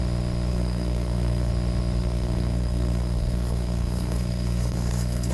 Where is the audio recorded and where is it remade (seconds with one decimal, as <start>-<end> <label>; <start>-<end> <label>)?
0.0-0.5 recorded; 0.5-1.5 remade; 1.5-2.0 recorded; 2.0-5.3 remade